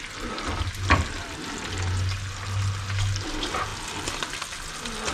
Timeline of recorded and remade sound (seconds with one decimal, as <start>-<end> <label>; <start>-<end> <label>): 0.0-5.1 recorded

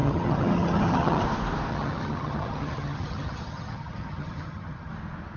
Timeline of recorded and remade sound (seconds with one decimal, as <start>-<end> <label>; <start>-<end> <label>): 0.0-1.2 remade; 1.2-1.7 recorded; 1.7-4.9 remade; 4.9-5.4 recorded

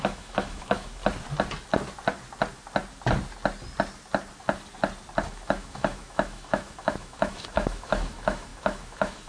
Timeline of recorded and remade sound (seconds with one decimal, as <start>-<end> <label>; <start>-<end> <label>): 0.0-1.0 remade; 1.0-5.3 recorded; 5.3-9.3 remade

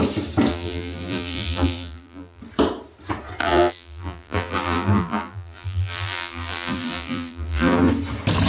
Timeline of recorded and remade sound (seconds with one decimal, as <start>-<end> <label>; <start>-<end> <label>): 0.0-0.5 recorded; 0.5-2.4 remade; 2.4-3.4 recorded; 3.4-7.9 remade; 7.9-8.5 recorded

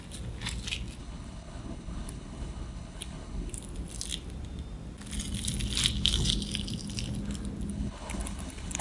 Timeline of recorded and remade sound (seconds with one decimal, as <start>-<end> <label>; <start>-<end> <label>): 0.0-1.0 recorded; 1.0-3.5 remade; 3.5-7.7 recorded; 7.7-8.8 remade

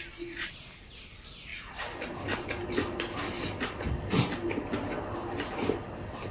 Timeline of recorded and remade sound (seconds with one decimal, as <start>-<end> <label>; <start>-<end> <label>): 0.0-6.3 recorded

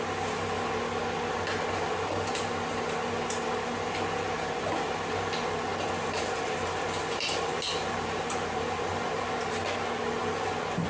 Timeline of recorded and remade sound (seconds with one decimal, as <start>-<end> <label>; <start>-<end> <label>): 0.0-5.7 recorded; 5.7-9.5 remade; 9.5-10.9 recorded

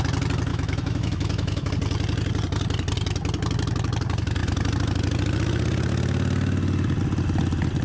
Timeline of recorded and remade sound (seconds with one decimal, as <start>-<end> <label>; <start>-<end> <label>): 0.0-0.5 recorded; 0.5-1.7 remade; 1.7-7.8 recorded